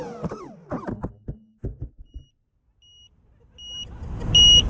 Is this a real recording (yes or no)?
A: yes